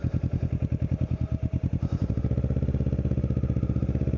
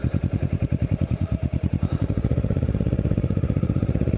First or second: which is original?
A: first